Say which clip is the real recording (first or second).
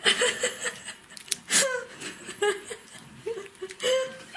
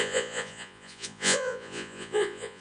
first